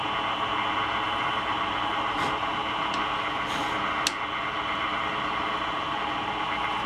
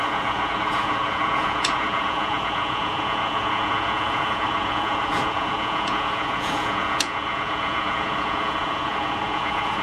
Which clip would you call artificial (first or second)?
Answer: second